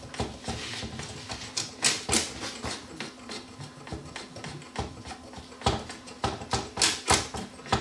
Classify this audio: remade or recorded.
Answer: recorded